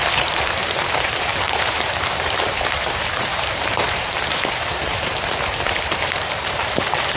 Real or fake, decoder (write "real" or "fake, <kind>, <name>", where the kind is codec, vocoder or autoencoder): fake, vocoder, BigVGAN v2